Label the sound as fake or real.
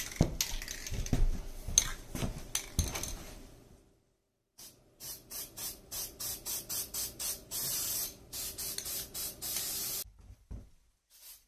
real